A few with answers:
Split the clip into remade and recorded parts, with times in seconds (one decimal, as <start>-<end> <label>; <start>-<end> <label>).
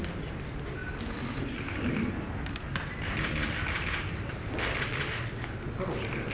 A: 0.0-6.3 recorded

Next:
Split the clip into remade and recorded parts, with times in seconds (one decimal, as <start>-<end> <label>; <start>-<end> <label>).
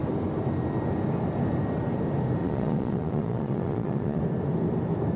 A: 0.0-2.4 recorded; 2.4-4.2 remade; 4.2-5.2 recorded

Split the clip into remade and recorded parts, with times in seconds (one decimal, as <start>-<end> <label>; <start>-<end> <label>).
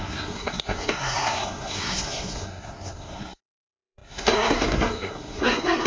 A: 0.0-5.9 remade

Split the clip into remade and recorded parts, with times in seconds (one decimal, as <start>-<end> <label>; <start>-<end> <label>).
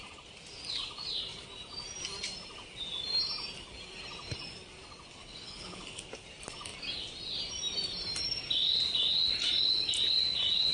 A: 0.0-5.2 recorded; 5.2-6.0 remade; 6.0-10.7 recorded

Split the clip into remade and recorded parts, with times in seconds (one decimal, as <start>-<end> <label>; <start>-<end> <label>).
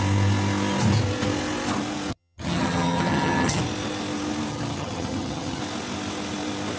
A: 0.0-2.1 recorded; 2.1-3.6 remade; 3.6-4.5 recorded; 4.5-5.6 remade; 5.6-6.8 recorded